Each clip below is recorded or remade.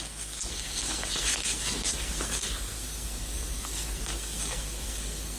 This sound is remade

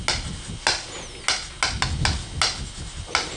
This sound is recorded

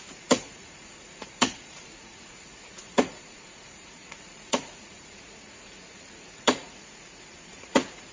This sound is remade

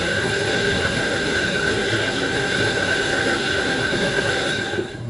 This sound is remade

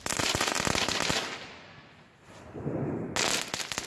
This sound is recorded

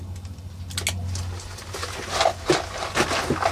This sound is recorded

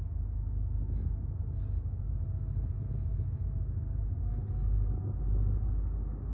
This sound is recorded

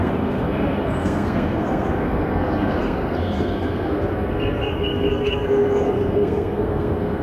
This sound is remade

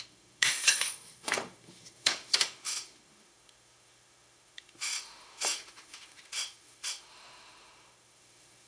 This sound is remade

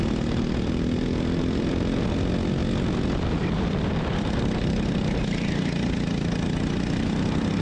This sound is recorded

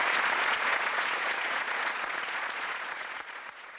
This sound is remade